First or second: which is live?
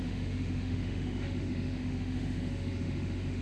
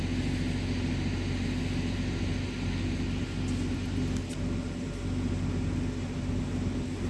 second